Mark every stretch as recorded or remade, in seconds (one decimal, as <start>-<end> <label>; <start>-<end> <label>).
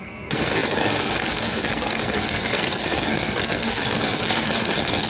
0.0-5.1 remade